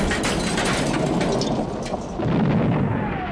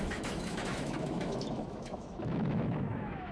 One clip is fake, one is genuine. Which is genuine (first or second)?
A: first